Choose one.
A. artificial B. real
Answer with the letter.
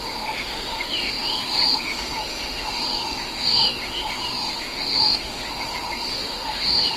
A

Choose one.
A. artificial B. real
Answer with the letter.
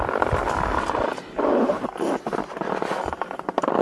B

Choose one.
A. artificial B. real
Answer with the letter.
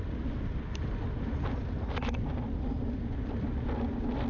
B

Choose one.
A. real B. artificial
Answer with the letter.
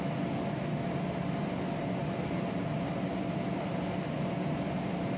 A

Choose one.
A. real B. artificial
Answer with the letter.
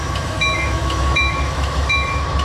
B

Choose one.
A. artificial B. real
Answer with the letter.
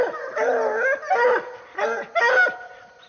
B